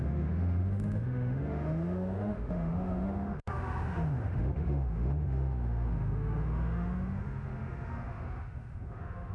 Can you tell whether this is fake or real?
fake